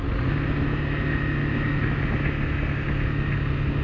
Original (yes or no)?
yes